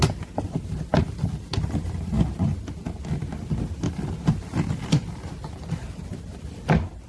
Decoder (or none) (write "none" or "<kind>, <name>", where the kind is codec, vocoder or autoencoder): none